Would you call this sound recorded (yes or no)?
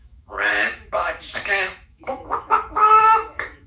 no